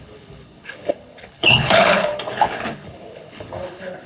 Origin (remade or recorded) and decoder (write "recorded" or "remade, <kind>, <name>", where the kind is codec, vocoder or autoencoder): remade, codec, HILCodec